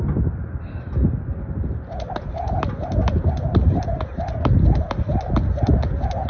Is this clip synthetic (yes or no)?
no